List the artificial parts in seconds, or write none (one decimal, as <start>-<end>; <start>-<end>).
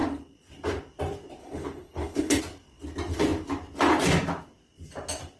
1.4-2.4